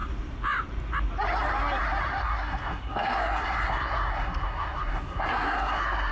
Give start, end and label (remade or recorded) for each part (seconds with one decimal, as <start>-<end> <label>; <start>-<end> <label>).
0.0-2.2 recorded; 2.2-6.1 remade